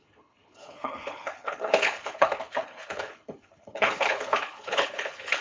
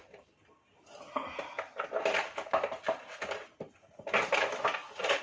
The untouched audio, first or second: second